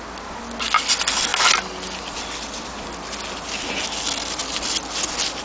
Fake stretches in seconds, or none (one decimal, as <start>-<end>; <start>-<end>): none

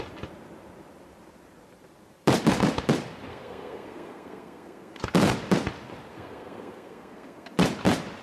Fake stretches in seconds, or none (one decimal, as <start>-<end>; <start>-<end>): 3.3-5.0; 6.1-7.5

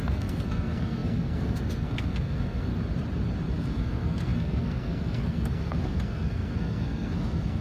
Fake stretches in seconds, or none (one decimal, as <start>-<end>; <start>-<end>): 0.0-2.7; 3.6-7.6